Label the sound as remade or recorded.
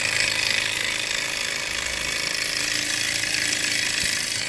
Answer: recorded